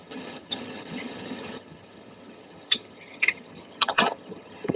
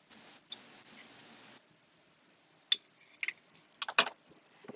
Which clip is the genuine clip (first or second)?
second